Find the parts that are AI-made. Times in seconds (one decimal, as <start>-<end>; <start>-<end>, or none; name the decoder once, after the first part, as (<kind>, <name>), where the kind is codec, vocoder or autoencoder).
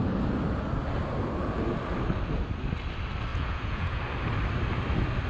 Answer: 3.3-4.0 (vocoder, Vocos)